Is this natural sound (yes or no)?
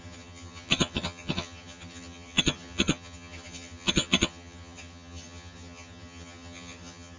no